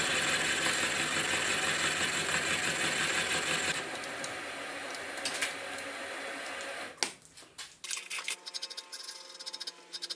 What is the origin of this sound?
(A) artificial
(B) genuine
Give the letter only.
B